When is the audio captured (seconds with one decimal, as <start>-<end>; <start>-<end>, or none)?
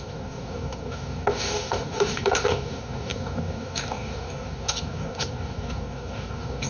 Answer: none